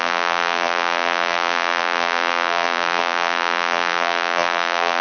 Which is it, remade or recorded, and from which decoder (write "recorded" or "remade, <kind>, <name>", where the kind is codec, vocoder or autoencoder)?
remade, vocoder, BigVGAN v2